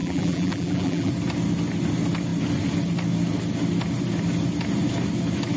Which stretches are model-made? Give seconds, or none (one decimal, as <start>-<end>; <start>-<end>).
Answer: 0.0-1.1